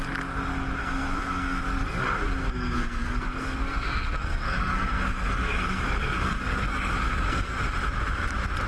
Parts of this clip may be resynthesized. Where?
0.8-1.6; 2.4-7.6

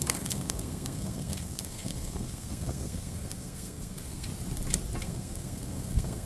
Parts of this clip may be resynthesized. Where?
0.0-4.3; 5.0-6.3

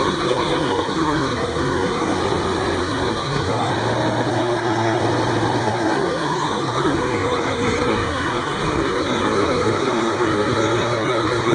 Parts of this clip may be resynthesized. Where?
0.0-2.2; 2.8-3.7; 4.3-5.0; 5.6-11.5

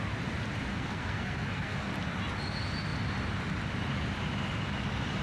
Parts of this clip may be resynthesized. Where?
0.7-1.9